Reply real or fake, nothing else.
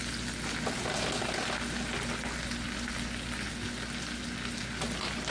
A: real